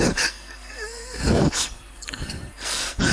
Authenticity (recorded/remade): remade